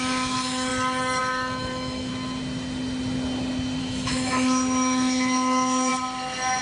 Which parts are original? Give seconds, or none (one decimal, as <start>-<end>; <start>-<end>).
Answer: 0.7-1.2; 2.1-3.8; 5.9-6.6